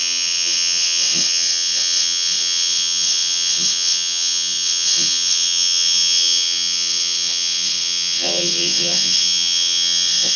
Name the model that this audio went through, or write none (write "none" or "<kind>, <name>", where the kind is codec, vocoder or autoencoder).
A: vocoder, WaveNeXt